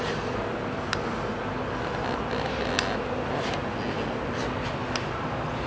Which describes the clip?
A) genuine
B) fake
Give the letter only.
A